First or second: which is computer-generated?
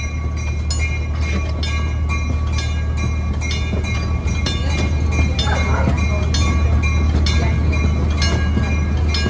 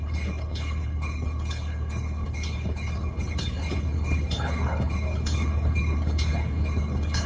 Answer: second